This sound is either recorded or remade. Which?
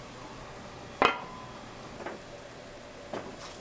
recorded